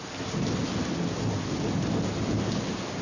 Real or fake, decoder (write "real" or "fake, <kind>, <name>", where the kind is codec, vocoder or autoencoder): real